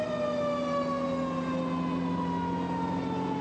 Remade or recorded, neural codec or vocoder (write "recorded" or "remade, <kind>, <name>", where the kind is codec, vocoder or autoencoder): recorded